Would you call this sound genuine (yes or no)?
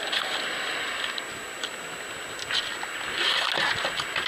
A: yes